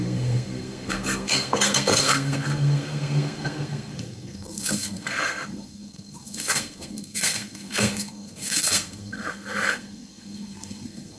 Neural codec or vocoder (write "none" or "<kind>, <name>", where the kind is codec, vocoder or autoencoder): codec, SNAC